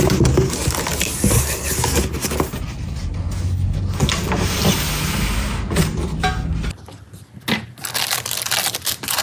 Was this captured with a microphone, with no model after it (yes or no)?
yes